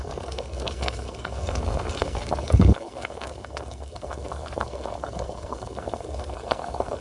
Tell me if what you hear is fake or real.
fake